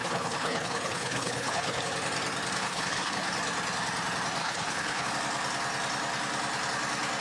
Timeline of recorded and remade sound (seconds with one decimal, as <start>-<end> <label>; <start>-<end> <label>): 0.0-1.8 remade; 1.8-2.6 recorded; 2.6-3.3 remade; 3.3-4.4 recorded; 4.4-5.1 remade; 5.1-7.2 recorded